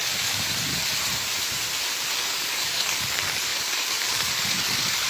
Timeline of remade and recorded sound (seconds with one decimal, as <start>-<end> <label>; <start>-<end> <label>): 0.0-0.7 remade; 0.7-2.1 recorded; 2.1-5.1 remade